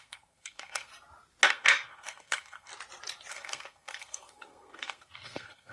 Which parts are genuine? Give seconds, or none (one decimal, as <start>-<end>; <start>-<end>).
0.9-1.5; 2.7-3.3